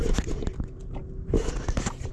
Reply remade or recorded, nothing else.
recorded